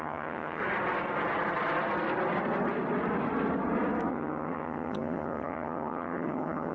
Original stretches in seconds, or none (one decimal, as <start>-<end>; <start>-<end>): 0.6-4.1